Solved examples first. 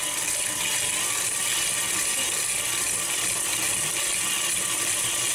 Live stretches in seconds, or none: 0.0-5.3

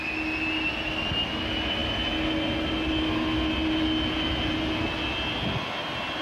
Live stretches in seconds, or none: 0.0-6.2